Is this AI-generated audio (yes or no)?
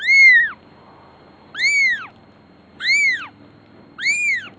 no